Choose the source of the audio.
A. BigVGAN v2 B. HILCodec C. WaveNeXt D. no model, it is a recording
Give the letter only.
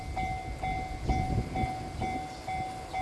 D